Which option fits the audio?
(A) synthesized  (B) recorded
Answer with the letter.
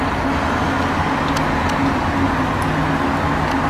B